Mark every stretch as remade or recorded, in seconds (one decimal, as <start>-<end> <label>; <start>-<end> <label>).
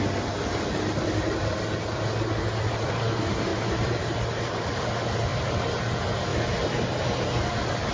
0.0-3.5 recorded; 3.5-4.8 remade; 4.8-5.3 recorded; 5.3-5.8 remade; 5.8-6.3 recorded; 6.3-7.0 remade; 7.0-7.9 recorded